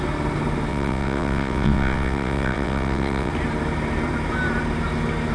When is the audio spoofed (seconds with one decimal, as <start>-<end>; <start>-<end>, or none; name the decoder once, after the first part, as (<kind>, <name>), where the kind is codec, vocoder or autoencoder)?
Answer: 0.7-3.3 (vocoder, WaveNeXt)